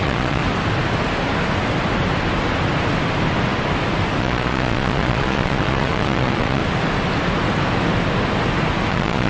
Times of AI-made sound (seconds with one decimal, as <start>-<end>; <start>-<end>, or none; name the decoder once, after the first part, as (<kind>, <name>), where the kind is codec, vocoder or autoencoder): 0.0-0.4 (vocoder, Vocos); 4.2-6.6; 8.9-9.3